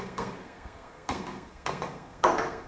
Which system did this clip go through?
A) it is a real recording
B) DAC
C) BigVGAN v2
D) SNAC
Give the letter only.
D